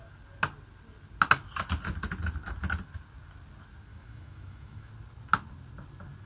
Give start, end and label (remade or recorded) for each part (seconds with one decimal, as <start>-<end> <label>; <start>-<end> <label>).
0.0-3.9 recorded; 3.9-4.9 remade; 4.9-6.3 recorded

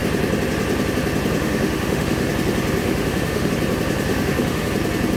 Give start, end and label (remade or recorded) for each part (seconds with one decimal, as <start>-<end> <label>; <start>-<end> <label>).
0.0-1.4 recorded; 1.4-2.3 remade; 2.3-2.8 recorded; 2.8-3.5 remade; 3.5-4.1 recorded; 4.1-4.7 remade; 4.7-5.2 recorded

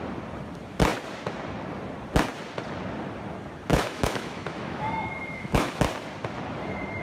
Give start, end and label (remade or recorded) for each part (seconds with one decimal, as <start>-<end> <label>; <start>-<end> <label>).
0.0-3.7 recorded; 3.7-5.8 remade; 5.8-7.0 recorded

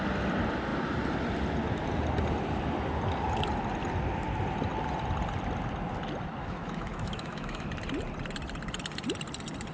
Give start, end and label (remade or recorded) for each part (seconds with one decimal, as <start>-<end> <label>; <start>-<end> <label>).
0.0-6.4 recorded; 6.4-7.7 remade; 7.7-9.7 recorded

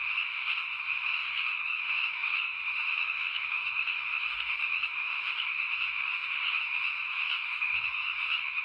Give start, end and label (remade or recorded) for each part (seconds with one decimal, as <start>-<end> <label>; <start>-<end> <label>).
0.0-8.6 remade